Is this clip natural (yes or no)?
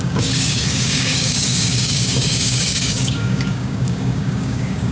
no